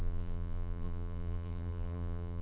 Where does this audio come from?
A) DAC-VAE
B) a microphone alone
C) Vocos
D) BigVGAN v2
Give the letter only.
D